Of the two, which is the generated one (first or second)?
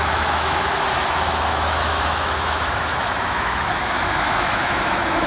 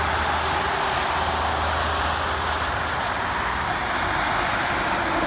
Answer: first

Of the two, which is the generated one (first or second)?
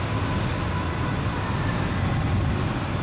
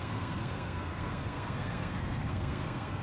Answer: second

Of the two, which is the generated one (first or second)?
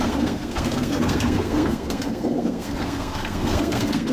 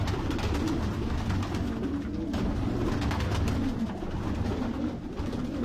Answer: first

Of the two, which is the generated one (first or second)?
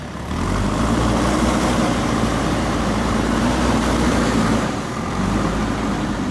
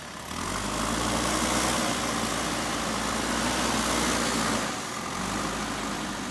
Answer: first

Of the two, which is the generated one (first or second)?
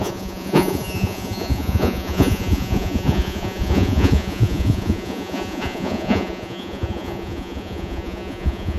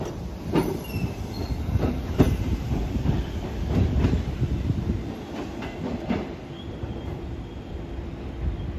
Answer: first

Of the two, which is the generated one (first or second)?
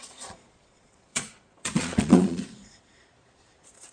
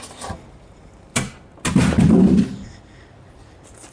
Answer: first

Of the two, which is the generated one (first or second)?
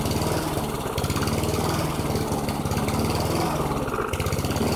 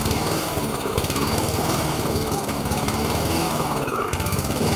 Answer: second